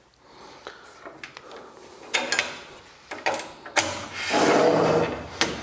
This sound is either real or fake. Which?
real